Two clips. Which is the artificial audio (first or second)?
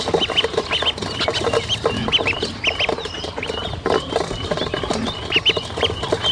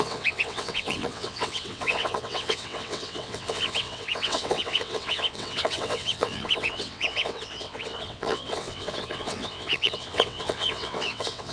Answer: second